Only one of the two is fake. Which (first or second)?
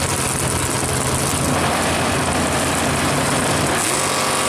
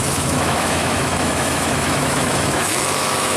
second